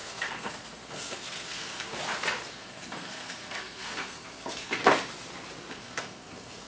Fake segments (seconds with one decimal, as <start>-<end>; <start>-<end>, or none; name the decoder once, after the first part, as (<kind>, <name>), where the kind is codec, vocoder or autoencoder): 0.0-1.9 (codec, SNAC); 2.5-4.8; 5.7-6.7